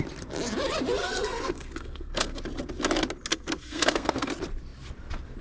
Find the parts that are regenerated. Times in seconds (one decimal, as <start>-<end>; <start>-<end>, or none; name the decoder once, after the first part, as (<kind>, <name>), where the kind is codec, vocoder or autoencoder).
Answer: 1.0-2.4 (codec, SNAC); 3.3-4.3